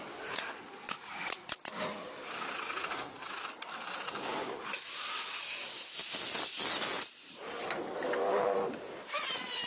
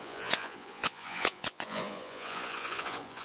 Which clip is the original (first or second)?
first